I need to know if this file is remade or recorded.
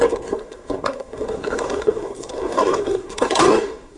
remade